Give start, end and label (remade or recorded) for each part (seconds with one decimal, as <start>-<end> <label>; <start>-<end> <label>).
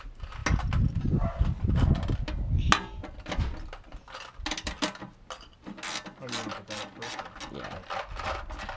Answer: 0.0-8.8 recorded